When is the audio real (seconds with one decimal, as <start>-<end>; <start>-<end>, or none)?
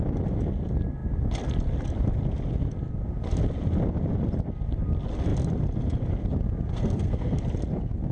0.0-6.7; 7.4-8.1